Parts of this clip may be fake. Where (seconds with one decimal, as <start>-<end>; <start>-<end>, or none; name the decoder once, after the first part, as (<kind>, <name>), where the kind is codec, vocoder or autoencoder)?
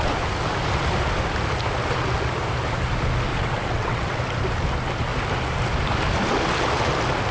3.3-4.2 (vocoder, WaveNeXt)